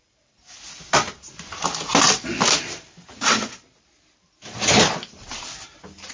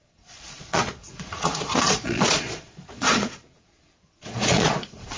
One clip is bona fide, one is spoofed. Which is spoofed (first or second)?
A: second